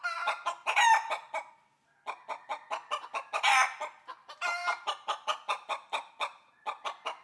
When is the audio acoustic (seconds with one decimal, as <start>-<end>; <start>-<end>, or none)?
0.0-7.2